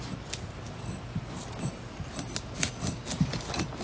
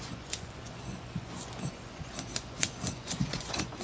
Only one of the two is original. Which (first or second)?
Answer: first